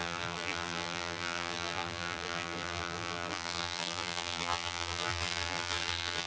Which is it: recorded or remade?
remade